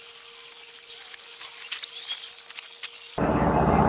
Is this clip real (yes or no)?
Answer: yes